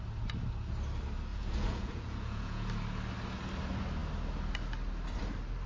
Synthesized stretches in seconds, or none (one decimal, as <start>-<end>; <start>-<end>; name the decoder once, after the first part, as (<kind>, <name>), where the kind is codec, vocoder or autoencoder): 1.3-2.7 (vocoder, Vocos)